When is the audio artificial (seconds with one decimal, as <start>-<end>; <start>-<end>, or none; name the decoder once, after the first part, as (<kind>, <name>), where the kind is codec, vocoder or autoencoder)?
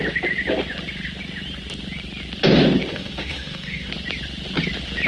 2.9-3.9 (autoencoder, DAC-VAE)